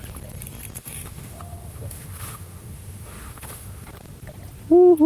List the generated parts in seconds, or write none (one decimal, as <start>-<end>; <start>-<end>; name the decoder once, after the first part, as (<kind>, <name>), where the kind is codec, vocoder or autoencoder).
0.8-3.9 (autoencoder, DAC-VAE)